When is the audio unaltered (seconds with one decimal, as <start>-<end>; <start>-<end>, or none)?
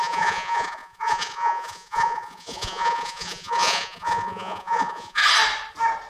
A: 5.2-6.1